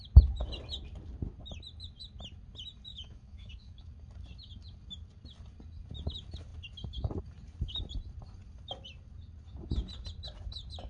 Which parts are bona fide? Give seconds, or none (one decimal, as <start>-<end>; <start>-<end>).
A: 0.0-2.9; 3.9-10.9